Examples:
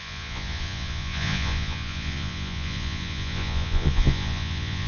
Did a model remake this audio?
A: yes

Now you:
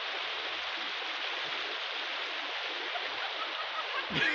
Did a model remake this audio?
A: no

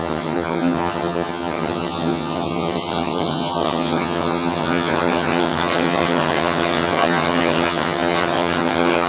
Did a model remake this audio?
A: yes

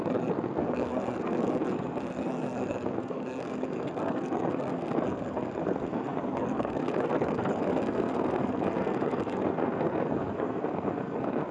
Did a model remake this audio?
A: yes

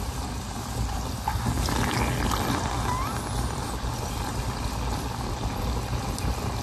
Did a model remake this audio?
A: no